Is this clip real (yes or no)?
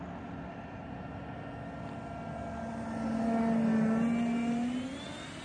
yes